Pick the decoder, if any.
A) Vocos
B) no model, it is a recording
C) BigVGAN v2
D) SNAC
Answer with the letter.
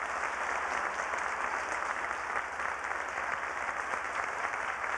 B